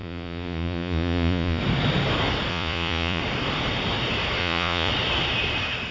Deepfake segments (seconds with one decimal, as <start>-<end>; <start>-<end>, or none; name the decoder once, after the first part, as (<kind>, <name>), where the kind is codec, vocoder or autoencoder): 0.0-1.6 (vocoder, Vocos); 2.5-3.2; 4.4-4.9